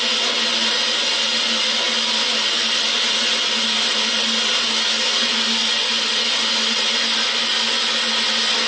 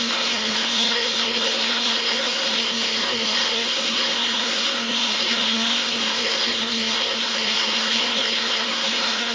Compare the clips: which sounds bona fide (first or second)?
first